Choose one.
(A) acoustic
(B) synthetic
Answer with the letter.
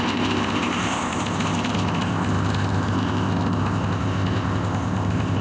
B